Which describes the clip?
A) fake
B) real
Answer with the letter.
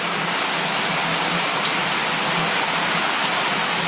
B